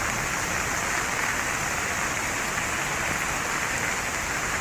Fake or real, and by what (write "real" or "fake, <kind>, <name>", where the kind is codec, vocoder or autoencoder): real